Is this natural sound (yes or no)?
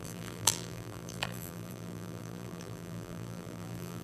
no